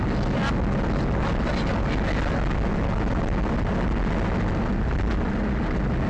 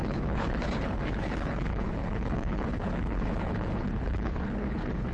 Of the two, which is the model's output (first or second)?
second